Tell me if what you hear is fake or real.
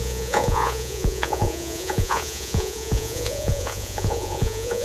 fake